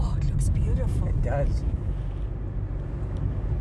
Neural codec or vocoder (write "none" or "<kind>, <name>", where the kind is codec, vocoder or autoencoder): none